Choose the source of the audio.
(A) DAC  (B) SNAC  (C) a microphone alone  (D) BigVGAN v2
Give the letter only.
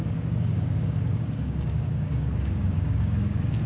A